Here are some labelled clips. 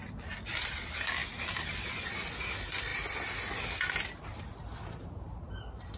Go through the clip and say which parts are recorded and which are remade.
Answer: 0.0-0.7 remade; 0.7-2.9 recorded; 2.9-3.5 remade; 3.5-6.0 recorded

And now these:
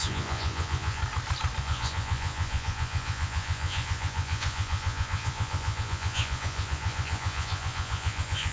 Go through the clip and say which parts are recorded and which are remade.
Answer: 0.0-1.0 remade; 1.0-1.6 recorded; 1.6-8.5 remade

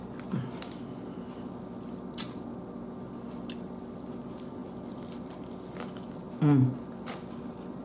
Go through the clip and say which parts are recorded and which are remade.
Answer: 0.0-7.8 recorded

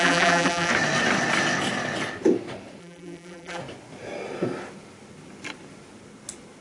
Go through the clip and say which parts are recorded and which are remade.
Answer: 0.0-0.7 remade; 0.7-2.8 recorded; 2.8-3.6 remade; 3.6-6.6 recorded

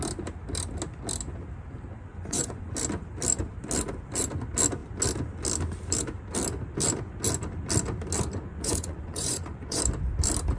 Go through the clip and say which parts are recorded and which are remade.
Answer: 0.0-2.1 recorded; 2.1-2.7 remade; 2.7-8.5 recorded; 8.5-9.8 remade; 9.8-10.6 recorded